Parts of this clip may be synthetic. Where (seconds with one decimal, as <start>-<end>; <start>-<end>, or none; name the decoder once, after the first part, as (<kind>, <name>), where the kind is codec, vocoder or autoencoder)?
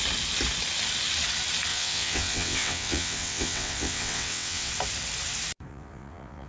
1.7-4.7 (vocoder, WaveNeXt); 5.7-6.5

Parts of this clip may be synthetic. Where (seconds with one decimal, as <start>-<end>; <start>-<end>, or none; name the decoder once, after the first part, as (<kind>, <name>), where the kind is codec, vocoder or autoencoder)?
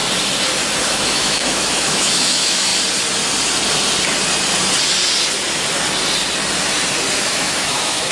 0.8-2.7 (autoencoder, DAC-VAE); 7.2-8.1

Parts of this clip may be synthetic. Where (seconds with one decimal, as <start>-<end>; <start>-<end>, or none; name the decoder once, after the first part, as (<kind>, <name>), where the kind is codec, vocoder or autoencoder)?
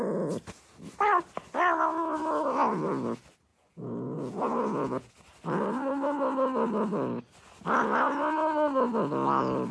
3.5-5.1 (vocoder, Vocos)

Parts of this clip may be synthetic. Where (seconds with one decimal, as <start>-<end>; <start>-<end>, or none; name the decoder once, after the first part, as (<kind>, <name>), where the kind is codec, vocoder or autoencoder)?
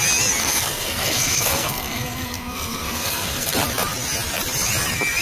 0.4-3.5 (codec, SNAC)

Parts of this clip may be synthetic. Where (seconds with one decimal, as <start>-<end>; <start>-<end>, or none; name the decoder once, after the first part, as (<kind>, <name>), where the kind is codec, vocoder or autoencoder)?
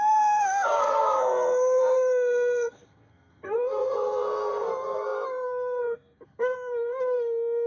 0.0-7.7 (codec, SNAC)